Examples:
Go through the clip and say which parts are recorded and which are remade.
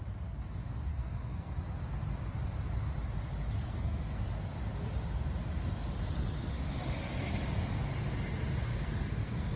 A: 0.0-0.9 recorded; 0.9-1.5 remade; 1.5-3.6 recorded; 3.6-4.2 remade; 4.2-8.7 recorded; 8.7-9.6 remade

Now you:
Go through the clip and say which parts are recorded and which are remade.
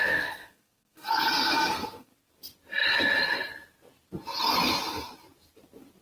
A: 0.0-2.1 remade; 2.1-6.0 recorded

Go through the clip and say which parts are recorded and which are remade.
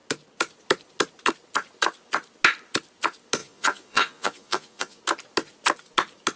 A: 0.0-3.4 recorded; 3.4-5.0 remade; 5.0-6.4 recorded